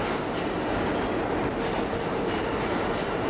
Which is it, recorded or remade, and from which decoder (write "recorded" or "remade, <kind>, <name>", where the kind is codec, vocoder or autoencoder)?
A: recorded